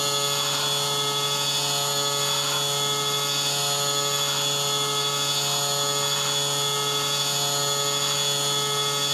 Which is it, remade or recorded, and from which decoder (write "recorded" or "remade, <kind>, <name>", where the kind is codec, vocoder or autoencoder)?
recorded